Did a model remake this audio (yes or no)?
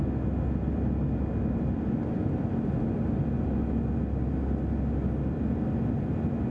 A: no